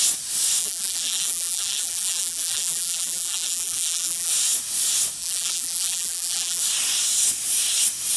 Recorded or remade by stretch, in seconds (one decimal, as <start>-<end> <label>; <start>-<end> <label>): 0.0-0.6 recorded; 0.6-4.3 remade; 4.3-5.2 recorded; 5.2-6.6 remade; 6.6-8.2 recorded